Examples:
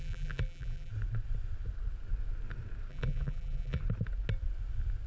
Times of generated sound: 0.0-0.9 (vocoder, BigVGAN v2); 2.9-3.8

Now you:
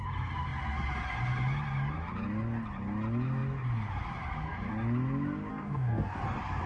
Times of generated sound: 5.5-6.2 (codec, DAC)